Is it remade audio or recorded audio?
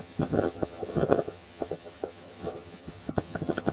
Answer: remade